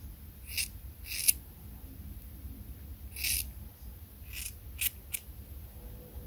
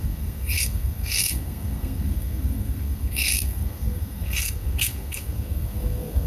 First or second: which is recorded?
first